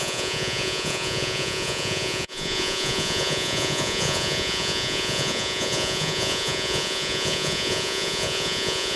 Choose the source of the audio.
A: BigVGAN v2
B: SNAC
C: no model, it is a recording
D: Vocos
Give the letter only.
D